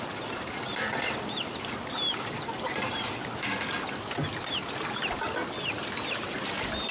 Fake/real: real